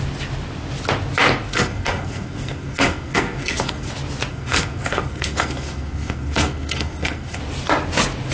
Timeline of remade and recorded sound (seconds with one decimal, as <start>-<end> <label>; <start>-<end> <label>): 0.0-1.5 recorded; 1.5-3.9 remade; 3.9-4.3 recorded; 4.3-7.4 remade; 7.4-8.3 recorded